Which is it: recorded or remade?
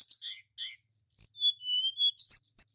recorded